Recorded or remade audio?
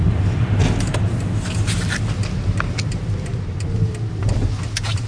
recorded